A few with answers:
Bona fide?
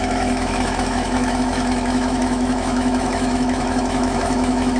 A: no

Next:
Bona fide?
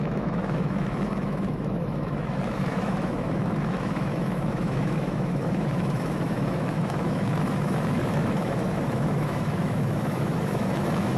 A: no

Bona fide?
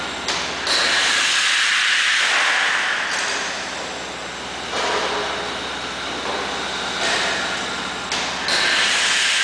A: yes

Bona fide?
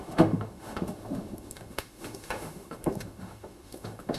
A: no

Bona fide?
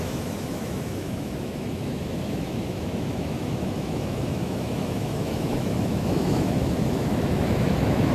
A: no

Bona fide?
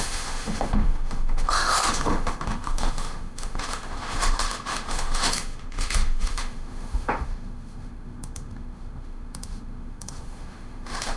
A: no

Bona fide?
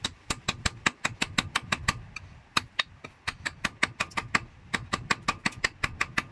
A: yes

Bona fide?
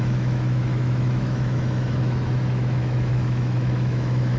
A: no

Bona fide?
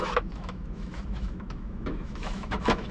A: no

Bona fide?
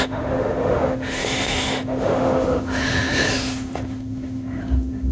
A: no